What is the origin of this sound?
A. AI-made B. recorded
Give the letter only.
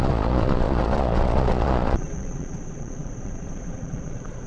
A